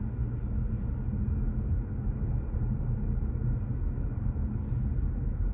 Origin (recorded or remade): recorded